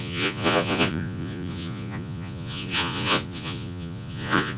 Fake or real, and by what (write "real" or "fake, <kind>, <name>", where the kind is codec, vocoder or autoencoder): fake, vocoder, Vocos